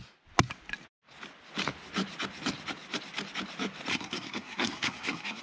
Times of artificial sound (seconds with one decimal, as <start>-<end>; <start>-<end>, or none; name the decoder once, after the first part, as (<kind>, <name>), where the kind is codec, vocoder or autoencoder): 3.9-5.4 (codec, SNAC)